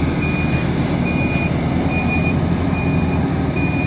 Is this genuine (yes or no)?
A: yes